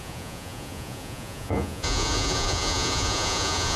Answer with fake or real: fake